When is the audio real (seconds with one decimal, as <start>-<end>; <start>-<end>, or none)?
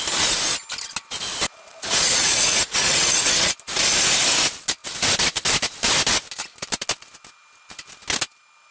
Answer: 0.0-1.7; 3.3-8.7